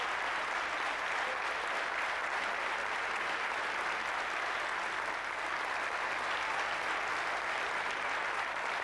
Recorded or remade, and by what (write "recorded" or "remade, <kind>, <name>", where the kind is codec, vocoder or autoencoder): recorded